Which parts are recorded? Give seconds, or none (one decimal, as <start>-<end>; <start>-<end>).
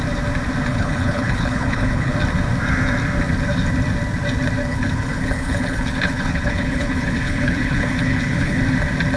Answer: 0.0-0.7; 2.1-4.7; 8.6-9.2